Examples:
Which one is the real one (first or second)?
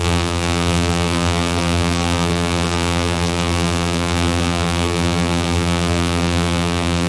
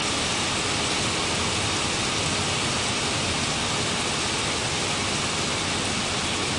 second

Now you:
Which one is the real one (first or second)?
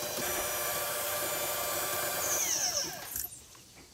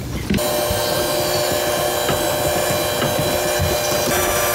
second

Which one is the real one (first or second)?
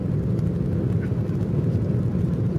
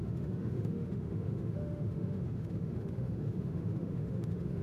first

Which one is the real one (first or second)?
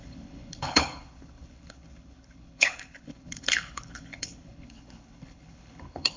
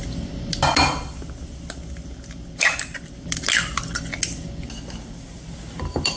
second